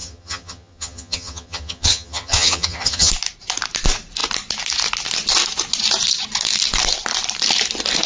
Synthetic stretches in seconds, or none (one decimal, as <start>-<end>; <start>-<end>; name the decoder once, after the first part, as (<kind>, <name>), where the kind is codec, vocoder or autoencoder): 0.0-3.1 (vocoder, HiFi-GAN)